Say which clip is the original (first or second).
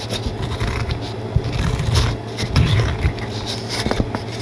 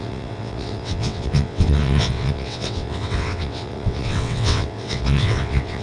first